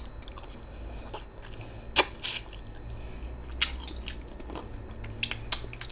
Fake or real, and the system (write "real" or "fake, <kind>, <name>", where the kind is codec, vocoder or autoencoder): real